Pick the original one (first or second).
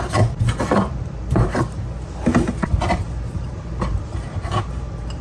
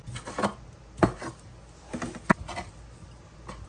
second